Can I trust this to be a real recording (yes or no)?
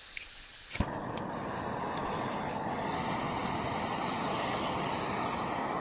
yes